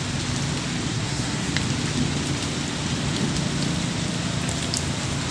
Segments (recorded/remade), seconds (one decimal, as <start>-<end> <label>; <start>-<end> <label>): 0.0-0.9 recorded; 0.9-1.5 remade; 1.5-5.3 recorded